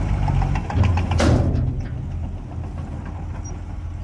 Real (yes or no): yes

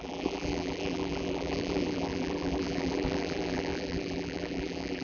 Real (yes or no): no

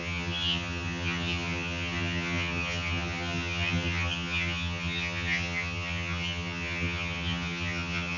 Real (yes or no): no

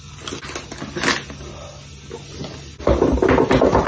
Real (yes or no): yes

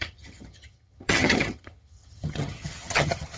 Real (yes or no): no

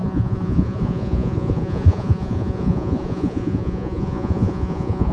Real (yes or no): no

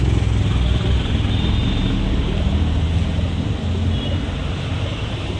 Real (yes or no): yes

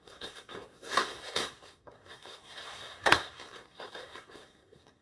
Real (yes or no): no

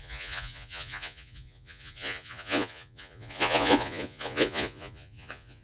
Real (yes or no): no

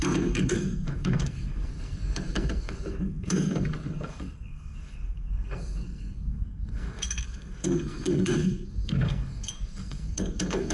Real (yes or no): no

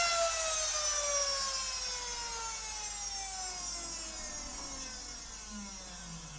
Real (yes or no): yes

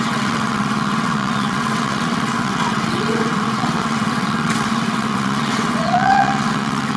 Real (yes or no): no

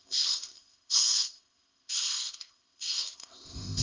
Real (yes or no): no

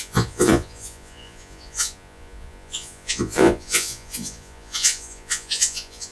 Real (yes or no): no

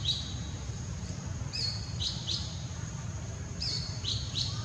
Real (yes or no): no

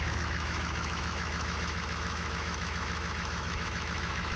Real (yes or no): no